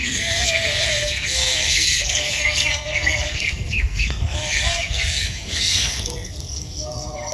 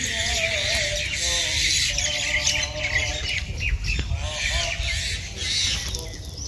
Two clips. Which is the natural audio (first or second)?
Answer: second